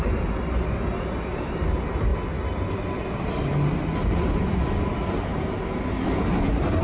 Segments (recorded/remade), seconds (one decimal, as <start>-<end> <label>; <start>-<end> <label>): 0.0-6.8 recorded